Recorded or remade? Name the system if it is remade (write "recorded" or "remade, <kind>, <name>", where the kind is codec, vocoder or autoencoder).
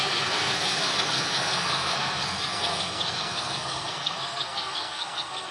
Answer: remade, codec, SNAC